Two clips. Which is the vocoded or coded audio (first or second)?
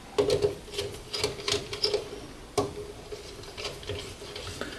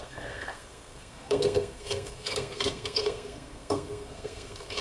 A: second